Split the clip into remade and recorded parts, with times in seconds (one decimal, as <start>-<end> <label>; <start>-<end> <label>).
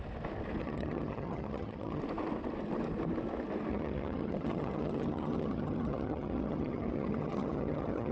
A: 0.0-0.6 recorded; 0.6-2.0 remade; 2.0-3.7 recorded; 3.7-8.1 remade